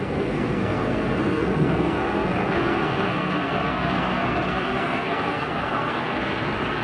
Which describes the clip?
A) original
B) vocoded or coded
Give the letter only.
B